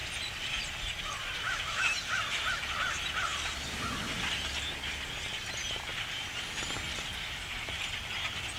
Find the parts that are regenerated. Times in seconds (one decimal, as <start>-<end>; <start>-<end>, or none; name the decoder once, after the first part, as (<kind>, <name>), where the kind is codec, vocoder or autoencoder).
5.9-8.2 (vocoder, BigVGAN v2)